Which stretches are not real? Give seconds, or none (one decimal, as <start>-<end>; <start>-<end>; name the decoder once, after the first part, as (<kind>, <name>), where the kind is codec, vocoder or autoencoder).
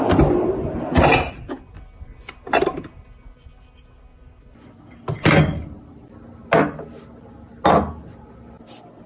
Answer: none